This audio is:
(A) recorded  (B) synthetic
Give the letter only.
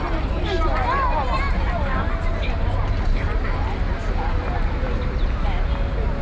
A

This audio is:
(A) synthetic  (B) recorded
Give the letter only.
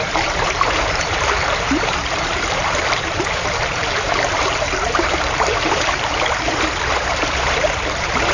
A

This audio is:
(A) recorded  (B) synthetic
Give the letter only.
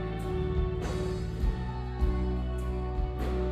A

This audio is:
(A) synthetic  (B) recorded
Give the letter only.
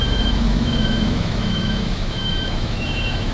A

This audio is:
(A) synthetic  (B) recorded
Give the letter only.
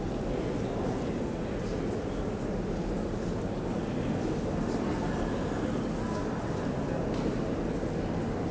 B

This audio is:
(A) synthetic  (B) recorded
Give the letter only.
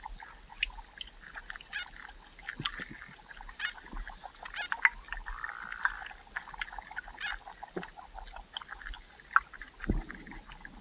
B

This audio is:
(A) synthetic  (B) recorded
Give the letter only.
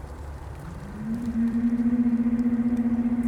A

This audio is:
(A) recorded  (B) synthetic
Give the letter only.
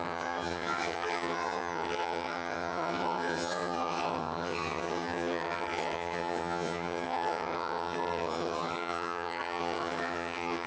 B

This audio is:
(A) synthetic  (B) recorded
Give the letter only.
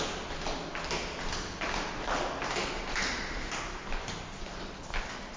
B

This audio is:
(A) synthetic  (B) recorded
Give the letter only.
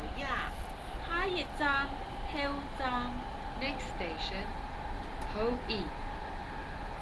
B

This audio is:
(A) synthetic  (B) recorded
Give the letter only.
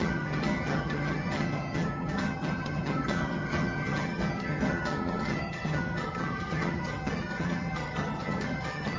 A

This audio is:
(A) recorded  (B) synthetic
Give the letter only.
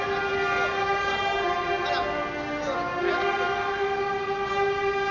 A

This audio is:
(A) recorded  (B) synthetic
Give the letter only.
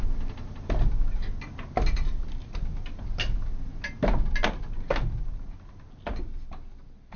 A